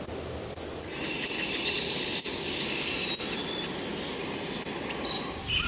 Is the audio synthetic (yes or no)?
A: no